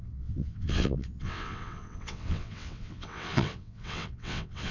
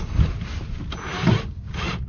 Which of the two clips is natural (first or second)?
second